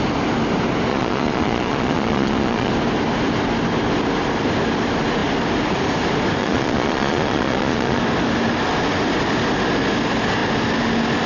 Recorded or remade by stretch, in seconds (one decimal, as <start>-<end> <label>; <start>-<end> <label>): 0.0-0.9 recorded; 0.9-2.7 remade; 2.7-6.4 recorded; 6.4-8.0 remade; 8.0-11.3 recorded